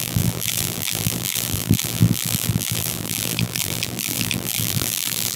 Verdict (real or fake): fake